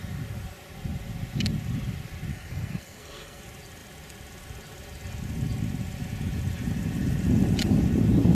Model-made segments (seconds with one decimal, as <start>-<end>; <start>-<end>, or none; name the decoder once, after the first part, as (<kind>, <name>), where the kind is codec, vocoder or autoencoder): 2.3-3.4 (codec, SNAC)